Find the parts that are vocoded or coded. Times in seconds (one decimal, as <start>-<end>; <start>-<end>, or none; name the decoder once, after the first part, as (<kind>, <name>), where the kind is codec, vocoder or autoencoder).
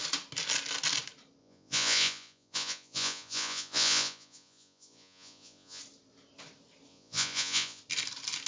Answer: 1.4-5.8 (vocoder, Vocos); 6.9-7.8